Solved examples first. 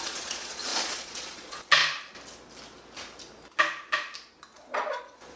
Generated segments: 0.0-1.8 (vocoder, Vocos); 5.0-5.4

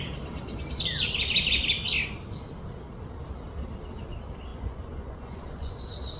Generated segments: 4.5-5.8 (vocoder, Vocos)

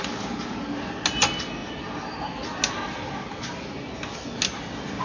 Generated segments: none

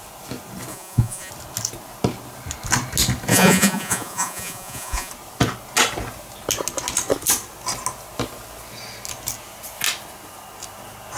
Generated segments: 0.7-1.3 (vocoder, Vocos); 3.3-5.1

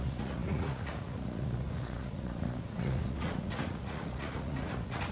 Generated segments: 0.0-5.1 (vocoder, Vocos)

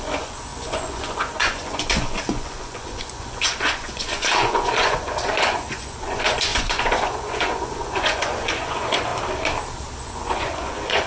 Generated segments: 0.0-9.1 (vocoder, Vocos); 10.0-11.1